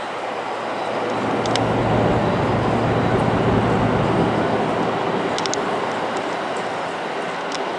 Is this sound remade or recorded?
recorded